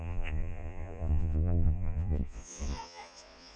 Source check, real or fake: fake